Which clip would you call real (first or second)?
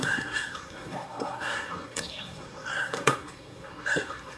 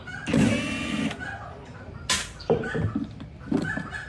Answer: second